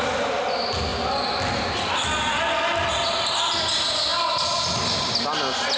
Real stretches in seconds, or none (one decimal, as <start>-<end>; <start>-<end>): 0.0-5.8